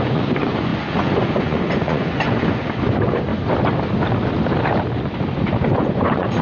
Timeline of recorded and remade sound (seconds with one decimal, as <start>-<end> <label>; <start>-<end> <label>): 0.0-3.3 remade; 3.3-5.8 recorded; 5.8-6.4 remade